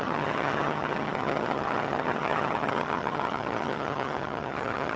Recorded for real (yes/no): no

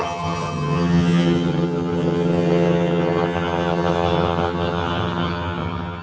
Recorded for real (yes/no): no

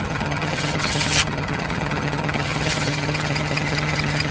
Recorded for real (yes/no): no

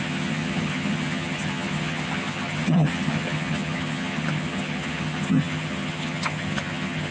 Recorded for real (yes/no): no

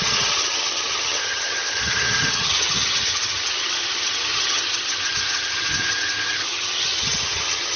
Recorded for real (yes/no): no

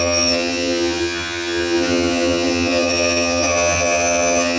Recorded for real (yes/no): no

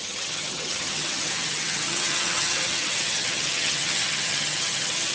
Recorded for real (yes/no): no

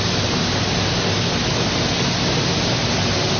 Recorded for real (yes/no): yes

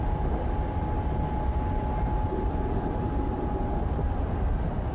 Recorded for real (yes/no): yes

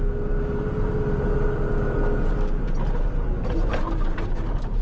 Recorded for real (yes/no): yes